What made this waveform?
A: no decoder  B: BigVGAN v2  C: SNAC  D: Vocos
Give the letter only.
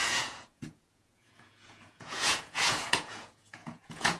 D